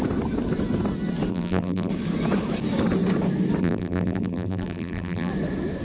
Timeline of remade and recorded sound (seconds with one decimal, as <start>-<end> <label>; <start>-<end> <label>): 0.0-1.3 recorded; 1.3-1.9 remade; 1.9-3.6 recorded; 3.6-5.3 remade; 5.3-5.8 recorded